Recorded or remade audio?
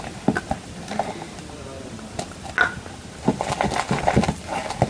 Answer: recorded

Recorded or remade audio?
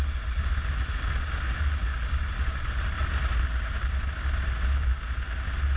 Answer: recorded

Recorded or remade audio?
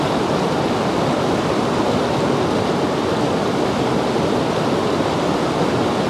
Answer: recorded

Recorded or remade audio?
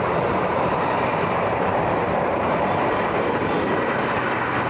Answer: remade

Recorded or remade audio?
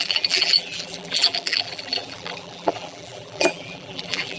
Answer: remade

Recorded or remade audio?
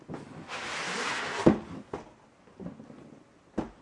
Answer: recorded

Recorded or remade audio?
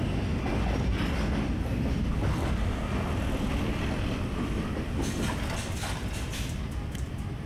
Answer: recorded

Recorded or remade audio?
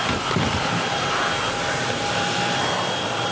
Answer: remade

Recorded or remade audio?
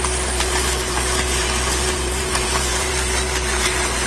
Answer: remade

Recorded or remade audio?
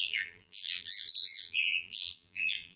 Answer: remade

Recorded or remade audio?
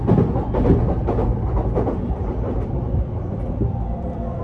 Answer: remade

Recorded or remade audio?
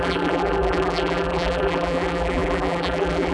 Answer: remade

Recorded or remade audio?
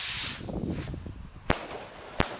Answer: recorded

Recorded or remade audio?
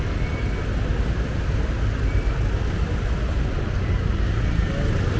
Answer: recorded